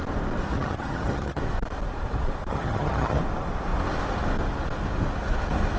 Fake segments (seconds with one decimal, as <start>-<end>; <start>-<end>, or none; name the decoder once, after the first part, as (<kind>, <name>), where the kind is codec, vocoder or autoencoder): 0.5-1.4 (vocoder, HiFi-GAN); 2.5-3.2